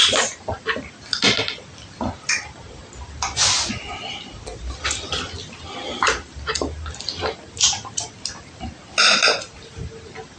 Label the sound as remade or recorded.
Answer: recorded